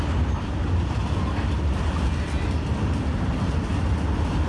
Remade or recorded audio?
recorded